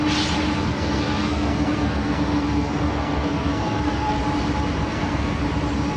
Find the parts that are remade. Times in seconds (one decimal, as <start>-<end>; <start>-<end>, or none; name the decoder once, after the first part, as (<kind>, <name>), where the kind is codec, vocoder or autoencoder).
0.6-4.2 (codec, SNAC); 4.9-5.4

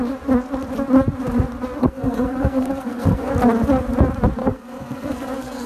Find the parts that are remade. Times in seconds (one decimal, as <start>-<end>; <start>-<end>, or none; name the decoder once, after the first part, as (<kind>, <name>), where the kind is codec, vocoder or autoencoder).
1.8-3.3 (codec, SNAC); 4.4-5.7

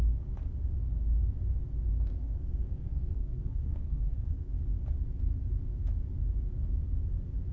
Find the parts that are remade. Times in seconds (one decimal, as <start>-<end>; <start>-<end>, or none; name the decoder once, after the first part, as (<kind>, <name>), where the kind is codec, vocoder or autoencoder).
2.1-4.6 (codec, SNAC)

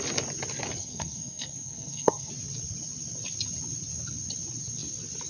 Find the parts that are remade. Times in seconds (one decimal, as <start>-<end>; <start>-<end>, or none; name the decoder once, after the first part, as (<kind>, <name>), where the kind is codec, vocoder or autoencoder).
0.8-2.3 (codec, SNAC)

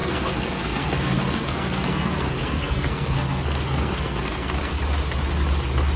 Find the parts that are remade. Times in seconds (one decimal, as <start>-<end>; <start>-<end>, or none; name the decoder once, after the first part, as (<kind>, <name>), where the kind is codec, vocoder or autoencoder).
0.0-4.7 (codec, SNAC)

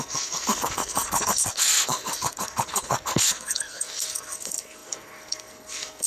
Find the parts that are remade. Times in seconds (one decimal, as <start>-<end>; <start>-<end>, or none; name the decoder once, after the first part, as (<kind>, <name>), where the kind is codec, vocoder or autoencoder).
0.0-6.1 (codec, SNAC)

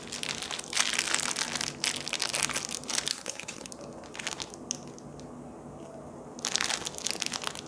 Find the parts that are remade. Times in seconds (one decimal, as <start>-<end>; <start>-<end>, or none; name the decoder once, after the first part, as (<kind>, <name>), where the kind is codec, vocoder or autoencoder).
3.1-3.7 (codec, SNAC)

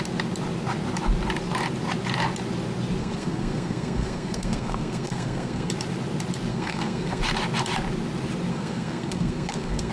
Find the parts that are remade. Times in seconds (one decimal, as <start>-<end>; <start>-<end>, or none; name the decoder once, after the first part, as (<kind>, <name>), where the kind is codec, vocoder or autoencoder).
3.0-5.7 (codec, SNAC); 6.5-7.2; 8.5-9.9